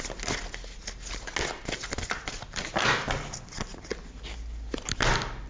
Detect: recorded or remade recorded